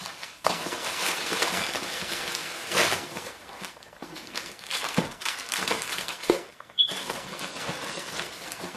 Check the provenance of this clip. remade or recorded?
remade